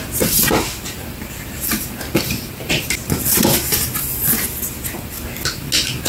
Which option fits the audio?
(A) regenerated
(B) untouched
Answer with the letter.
B